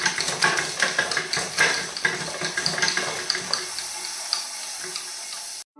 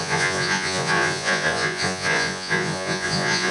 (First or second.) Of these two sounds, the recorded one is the first